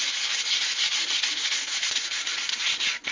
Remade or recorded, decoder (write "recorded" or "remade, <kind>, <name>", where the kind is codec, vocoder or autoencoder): recorded